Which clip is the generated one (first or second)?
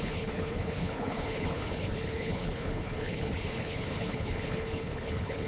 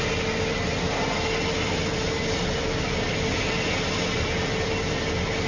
first